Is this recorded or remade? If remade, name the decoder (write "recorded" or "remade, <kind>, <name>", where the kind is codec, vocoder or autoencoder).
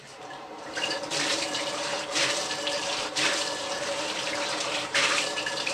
remade, vocoder, BigVGAN v2